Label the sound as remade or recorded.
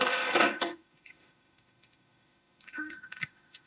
remade